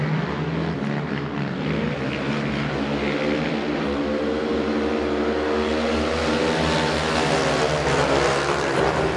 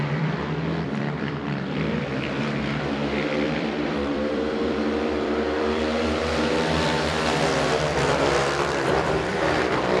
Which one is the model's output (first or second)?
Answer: second